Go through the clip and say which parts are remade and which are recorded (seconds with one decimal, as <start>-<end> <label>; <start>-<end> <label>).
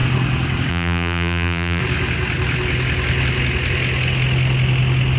0.0-0.7 recorded; 0.7-1.8 remade; 1.8-5.2 recorded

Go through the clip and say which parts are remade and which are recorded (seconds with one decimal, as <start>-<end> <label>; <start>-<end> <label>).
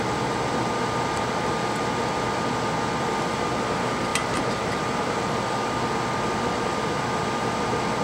0.0-8.0 recorded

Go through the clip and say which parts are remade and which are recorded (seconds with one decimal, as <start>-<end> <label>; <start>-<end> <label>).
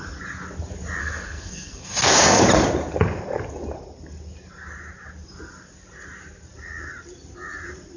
0.0-1.0 recorded; 1.0-2.4 remade; 2.4-8.0 recorded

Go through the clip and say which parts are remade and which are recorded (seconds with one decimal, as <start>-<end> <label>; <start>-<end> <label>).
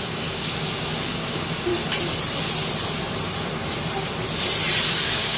0.0-1.7 remade; 1.7-4.9 recorded; 4.9-5.4 remade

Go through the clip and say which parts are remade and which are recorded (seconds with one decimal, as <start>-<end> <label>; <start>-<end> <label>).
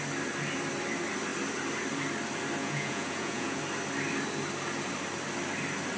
0.0-2.6 recorded; 2.6-3.6 remade; 3.6-6.0 recorded